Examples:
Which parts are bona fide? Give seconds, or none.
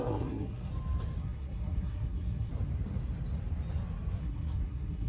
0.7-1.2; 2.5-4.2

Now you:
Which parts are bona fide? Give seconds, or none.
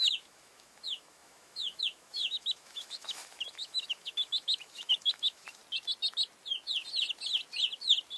5.6-8.2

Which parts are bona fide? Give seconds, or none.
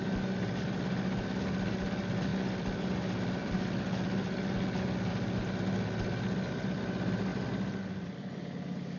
0.0-9.0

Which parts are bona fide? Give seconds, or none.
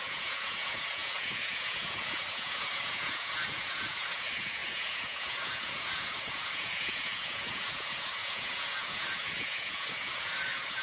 none